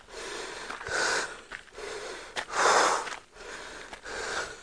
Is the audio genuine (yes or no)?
yes